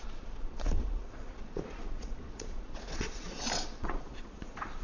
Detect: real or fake fake